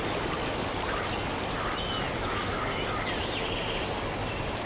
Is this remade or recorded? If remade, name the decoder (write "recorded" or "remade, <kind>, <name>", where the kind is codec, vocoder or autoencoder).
recorded